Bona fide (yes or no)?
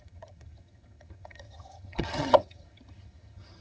no